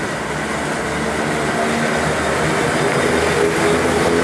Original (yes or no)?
yes